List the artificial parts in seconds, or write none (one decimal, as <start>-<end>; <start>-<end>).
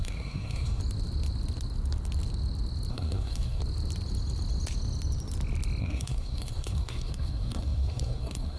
0.0-0.8; 2.9-3.6; 5.8-8.6